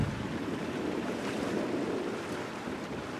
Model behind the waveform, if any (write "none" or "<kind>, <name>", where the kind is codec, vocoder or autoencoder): none